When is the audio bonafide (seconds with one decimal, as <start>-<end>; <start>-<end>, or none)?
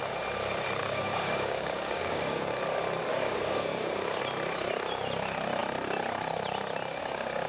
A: 0.0-0.8; 2.5-3.1; 4.2-7.5